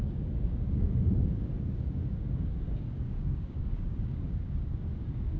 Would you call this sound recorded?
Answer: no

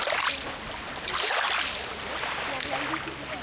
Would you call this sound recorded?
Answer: yes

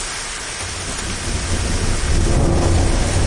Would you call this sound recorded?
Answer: yes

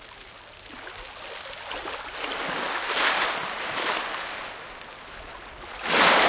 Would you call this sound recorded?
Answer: yes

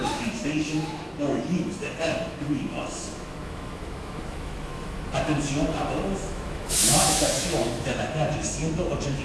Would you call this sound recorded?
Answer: no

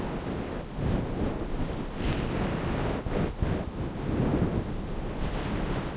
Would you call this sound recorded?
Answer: yes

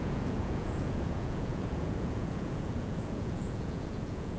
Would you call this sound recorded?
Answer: no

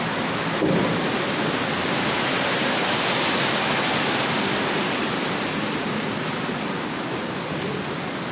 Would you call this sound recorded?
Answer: yes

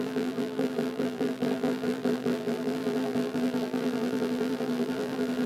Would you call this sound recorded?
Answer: no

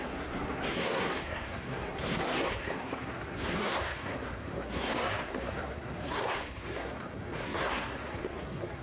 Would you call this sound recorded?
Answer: no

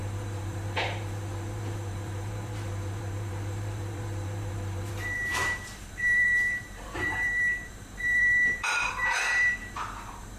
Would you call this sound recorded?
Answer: no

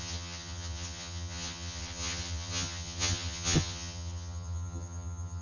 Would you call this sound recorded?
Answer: no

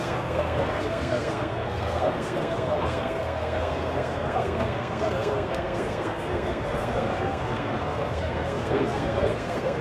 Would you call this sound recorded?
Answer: no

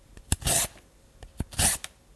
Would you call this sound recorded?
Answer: yes